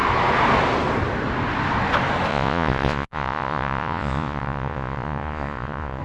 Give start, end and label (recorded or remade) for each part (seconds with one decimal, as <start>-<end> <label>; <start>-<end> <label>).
0.0-2.3 recorded; 2.3-6.0 remade